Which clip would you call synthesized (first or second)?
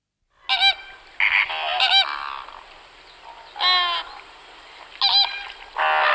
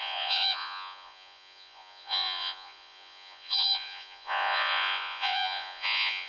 second